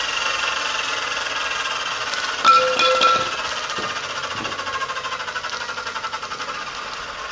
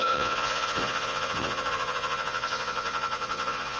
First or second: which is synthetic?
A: second